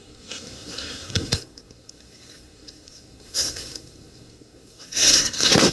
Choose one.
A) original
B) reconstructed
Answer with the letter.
B